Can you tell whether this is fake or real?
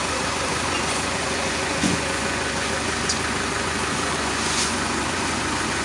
fake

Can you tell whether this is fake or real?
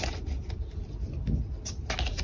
real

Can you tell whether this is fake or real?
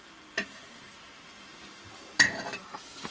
real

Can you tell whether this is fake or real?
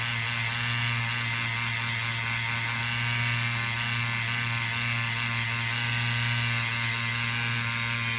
real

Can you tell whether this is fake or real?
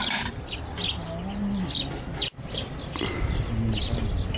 real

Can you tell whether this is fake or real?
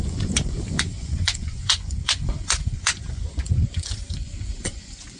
fake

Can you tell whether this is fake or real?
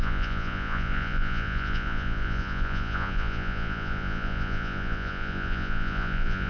fake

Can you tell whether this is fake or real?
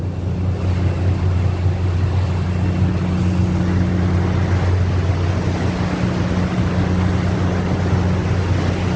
real